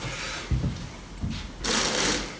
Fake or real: real